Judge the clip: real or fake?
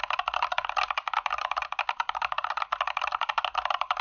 real